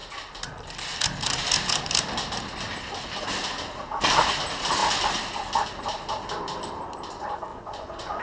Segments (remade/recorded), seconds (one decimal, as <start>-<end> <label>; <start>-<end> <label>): 0.0-7.5 recorded; 7.5-8.2 remade